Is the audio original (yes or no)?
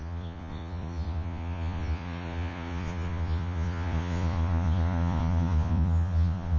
no